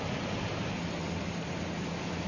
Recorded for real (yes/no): yes